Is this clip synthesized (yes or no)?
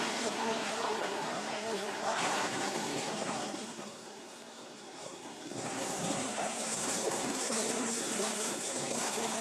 yes